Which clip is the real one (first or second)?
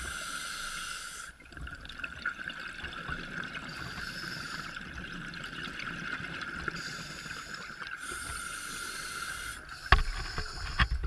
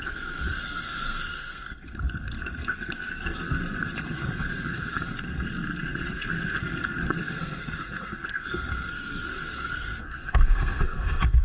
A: first